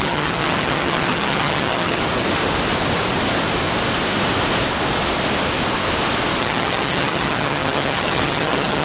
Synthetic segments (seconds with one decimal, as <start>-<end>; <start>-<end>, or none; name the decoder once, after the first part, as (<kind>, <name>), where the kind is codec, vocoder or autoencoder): 0.0-2.0 (vocoder, HiFi-GAN); 6.4-8.8